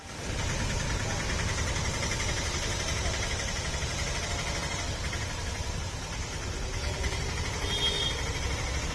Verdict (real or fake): real